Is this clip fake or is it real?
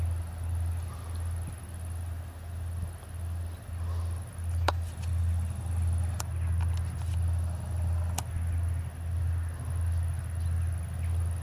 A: real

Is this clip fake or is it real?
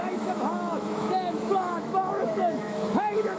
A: fake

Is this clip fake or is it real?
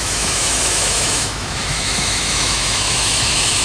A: fake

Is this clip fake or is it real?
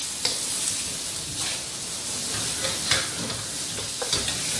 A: real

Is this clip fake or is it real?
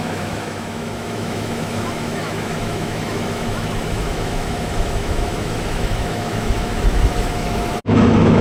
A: fake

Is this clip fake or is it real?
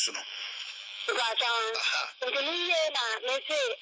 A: fake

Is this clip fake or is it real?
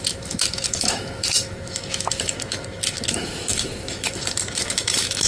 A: fake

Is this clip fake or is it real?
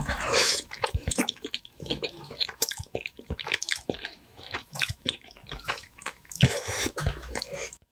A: fake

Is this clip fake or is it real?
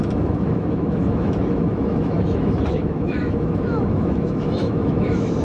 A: fake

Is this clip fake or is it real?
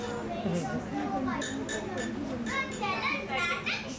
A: real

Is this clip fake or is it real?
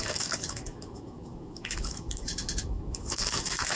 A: fake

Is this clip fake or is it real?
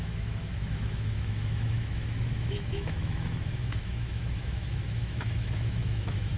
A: fake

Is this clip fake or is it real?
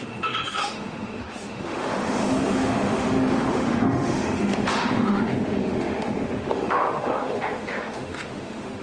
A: fake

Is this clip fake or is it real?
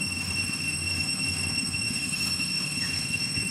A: fake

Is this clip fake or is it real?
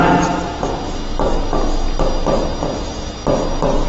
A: real